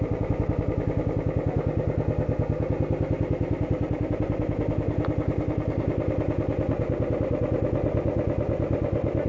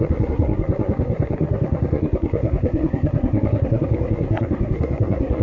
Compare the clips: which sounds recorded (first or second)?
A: first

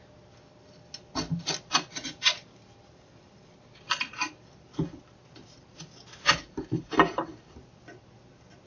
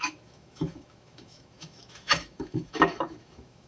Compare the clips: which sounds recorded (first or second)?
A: first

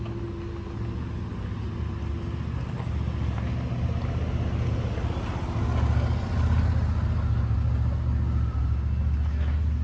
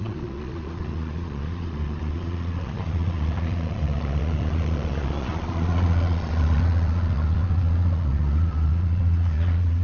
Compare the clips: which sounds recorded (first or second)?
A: first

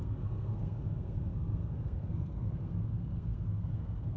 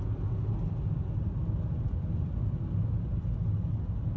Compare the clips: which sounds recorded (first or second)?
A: second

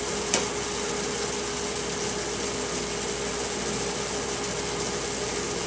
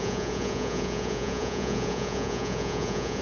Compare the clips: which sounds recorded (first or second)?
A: first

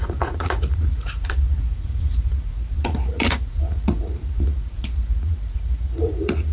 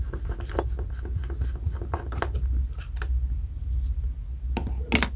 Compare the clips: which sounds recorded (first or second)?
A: second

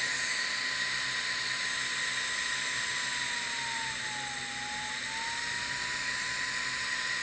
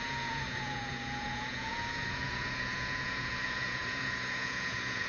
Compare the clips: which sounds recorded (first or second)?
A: first